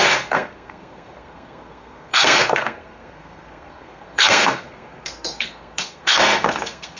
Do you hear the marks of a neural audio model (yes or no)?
yes